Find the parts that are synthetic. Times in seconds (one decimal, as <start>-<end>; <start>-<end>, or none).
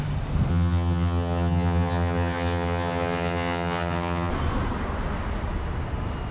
0.5-4.3